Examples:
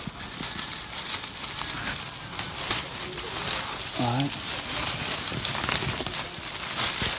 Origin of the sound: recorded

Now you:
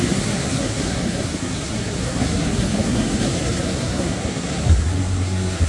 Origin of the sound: remade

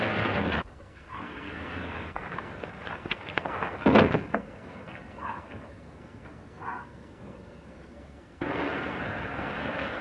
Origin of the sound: remade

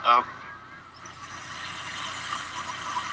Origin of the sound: recorded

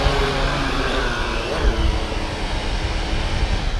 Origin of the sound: recorded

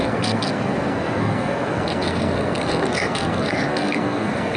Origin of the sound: remade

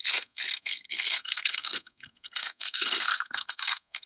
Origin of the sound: remade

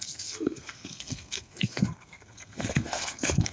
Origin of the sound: remade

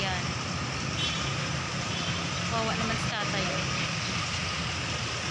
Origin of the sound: recorded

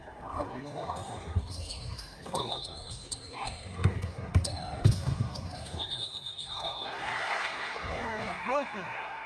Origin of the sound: remade